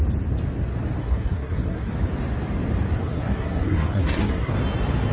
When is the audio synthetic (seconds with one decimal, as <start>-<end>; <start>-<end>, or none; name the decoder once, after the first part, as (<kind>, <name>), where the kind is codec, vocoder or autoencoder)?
1.0-1.9 (codec, SNAC); 3.0-4.5